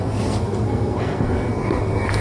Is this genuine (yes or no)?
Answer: no